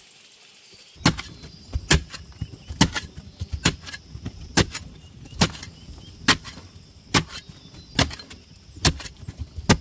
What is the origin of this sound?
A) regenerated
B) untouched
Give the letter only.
B